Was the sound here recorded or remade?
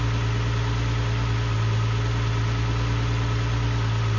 recorded